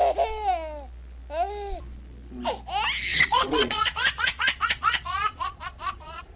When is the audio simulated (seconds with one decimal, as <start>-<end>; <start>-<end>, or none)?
3.1-6.4